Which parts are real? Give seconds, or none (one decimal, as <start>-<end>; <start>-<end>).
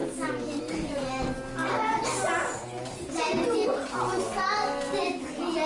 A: 0.0-5.7